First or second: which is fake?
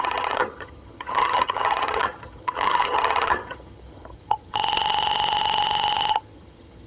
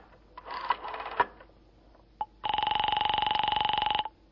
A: first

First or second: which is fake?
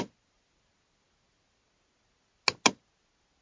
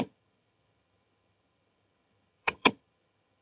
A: second